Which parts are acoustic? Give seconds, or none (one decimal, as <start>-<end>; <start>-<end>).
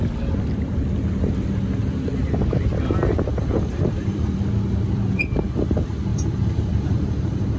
0.0-3.3; 4.4-6.1